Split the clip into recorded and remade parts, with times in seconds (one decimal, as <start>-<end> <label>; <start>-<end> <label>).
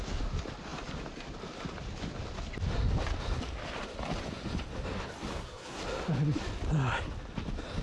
0.0-5.3 recorded; 5.3-5.8 remade; 5.8-7.8 recorded